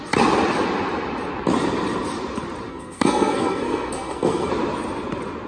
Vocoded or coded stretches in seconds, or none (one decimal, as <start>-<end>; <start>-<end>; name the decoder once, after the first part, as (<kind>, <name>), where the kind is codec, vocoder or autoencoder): 2.7-4.5 (codec, SNAC)